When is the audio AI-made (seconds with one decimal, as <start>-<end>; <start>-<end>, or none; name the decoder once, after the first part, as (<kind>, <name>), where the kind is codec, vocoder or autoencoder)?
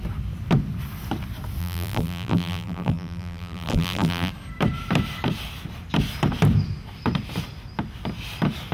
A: 1.6-4.3 (vocoder, BigVGAN v2)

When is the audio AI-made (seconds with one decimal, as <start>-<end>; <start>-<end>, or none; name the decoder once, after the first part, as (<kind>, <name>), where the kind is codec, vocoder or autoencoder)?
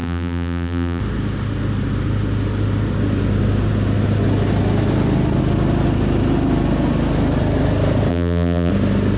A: 0.0-1.0 (vocoder, BigVGAN v2); 8.1-8.7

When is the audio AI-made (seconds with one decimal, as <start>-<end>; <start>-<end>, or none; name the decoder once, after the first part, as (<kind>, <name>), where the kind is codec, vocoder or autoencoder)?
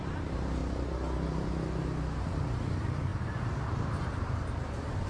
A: 0.0-0.6 (vocoder, BigVGAN v2); 2.6-5.1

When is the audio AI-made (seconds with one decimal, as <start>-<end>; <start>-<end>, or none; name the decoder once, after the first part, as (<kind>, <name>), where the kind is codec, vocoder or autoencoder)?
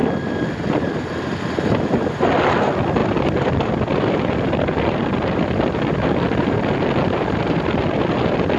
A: 0.0-1.6 (vocoder, BigVGAN v2); 3.0-8.0